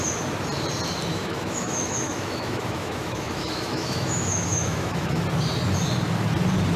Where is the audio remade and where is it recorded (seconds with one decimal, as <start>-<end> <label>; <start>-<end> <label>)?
0.0-1.1 recorded; 1.1-5.2 remade; 5.2-6.8 recorded